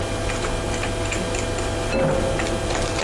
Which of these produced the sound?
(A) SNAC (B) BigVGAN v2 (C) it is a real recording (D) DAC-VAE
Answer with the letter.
C